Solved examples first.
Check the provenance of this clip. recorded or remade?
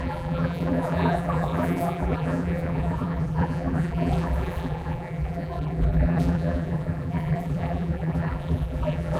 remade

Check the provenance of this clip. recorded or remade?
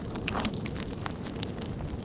remade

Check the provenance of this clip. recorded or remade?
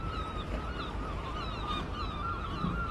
remade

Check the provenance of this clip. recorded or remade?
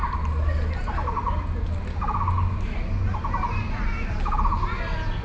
recorded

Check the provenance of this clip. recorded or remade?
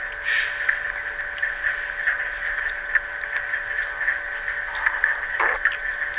recorded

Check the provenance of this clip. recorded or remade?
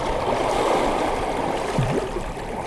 remade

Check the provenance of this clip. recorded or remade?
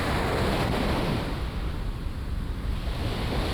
recorded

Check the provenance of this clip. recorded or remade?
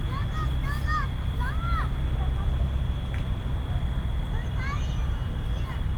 recorded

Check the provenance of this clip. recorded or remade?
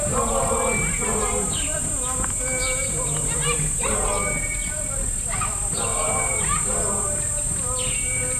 recorded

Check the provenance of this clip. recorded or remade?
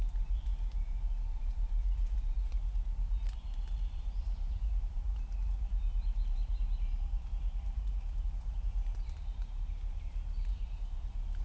remade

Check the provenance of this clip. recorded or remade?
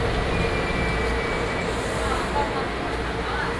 recorded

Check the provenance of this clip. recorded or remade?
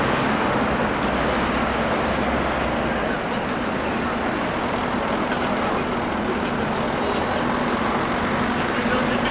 recorded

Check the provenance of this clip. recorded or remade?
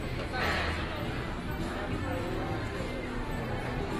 recorded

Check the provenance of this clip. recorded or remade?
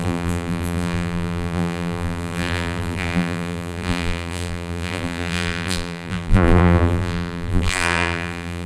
remade